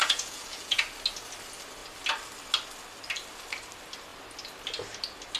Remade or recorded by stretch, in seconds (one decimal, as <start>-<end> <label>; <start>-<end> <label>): 0.0-0.8 remade; 0.8-5.4 recorded